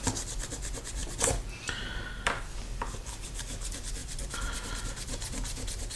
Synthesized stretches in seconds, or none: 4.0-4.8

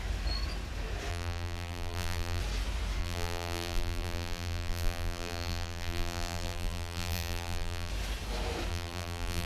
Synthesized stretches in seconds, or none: 1.1-2.4; 3.0-7.9; 8.7-9.5

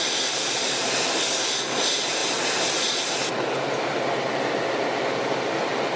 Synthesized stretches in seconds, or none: none